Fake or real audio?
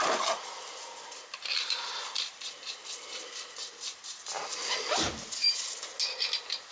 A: real